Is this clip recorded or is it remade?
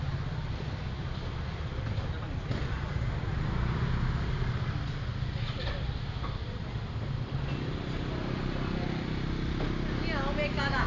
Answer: recorded